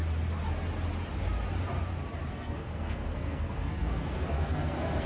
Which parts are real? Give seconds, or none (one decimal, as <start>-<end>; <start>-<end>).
0.0-2.3